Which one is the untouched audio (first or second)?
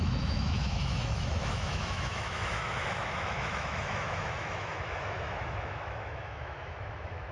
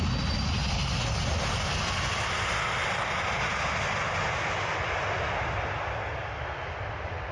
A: second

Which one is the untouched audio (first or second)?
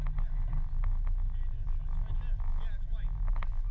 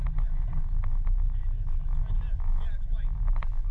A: first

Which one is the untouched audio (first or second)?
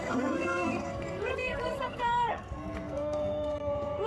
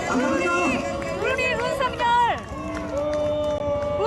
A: second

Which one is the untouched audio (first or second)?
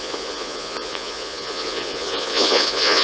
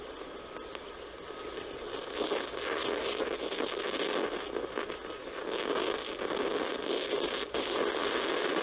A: second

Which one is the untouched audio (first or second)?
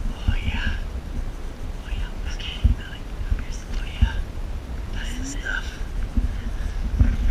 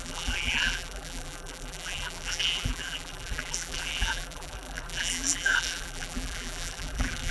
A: first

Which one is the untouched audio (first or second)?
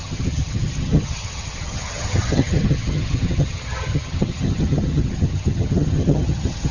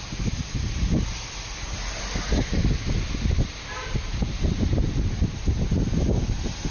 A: second